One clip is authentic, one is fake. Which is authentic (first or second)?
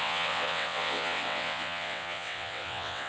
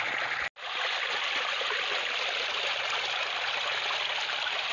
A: second